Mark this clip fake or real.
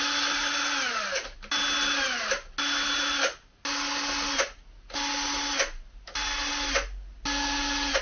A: real